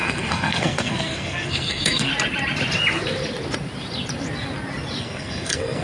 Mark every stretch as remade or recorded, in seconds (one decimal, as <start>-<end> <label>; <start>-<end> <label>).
0.0-2.1 remade; 2.1-5.0 recorded; 5.0-5.8 remade